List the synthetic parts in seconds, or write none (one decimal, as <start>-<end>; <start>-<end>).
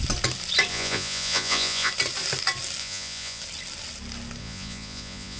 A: 0.7-1.9; 2.8-3.4; 4.4-5.4